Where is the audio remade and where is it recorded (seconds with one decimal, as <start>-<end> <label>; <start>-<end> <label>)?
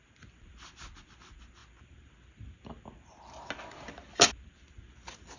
0.0-5.4 recorded